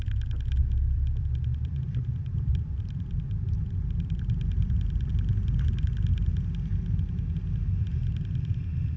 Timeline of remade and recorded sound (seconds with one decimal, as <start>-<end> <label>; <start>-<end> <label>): 0.0-0.6 recorded; 0.6-5.1 remade; 5.1-8.0 recorded; 8.0-9.0 remade

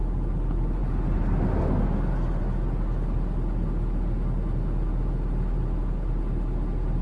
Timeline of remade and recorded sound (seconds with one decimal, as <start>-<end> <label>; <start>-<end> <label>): 0.0-7.0 recorded

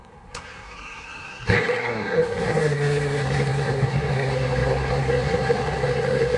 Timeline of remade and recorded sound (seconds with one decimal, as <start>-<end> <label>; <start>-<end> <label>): 0.0-6.4 remade

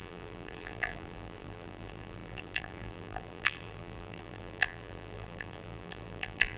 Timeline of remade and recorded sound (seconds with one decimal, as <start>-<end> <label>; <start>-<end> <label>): 0.0-6.6 remade

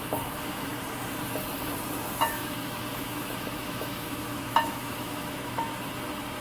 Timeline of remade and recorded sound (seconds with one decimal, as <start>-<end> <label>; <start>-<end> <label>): 0.0-0.7 remade; 0.7-2.3 recorded; 2.3-5.7 remade; 5.7-6.4 recorded

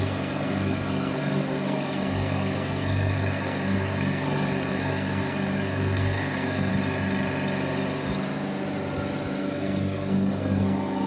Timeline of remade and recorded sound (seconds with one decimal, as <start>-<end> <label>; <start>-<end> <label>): 0.0-6.7 remade; 6.7-9.4 recorded; 9.4-11.1 remade

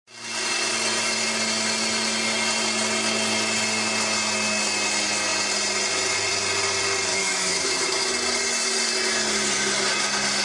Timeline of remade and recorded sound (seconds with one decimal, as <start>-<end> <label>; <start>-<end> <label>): 0.0-7.1 recorded; 7.1-8.1 remade; 8.1-10.4 recorded